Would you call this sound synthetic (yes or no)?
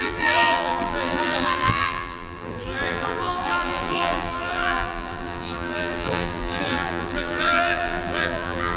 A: yes